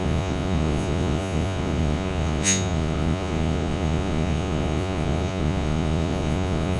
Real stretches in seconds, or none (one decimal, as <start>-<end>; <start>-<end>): none